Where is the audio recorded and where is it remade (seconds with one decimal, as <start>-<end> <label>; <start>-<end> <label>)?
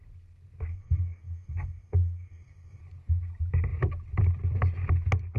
0.0-0.7 recorded; 0.7-2.8 remade; 2.8-5.4 recorded